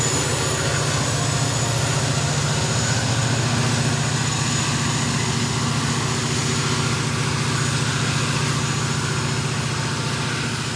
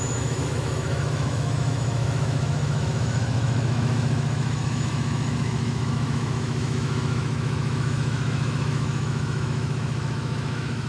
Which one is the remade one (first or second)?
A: second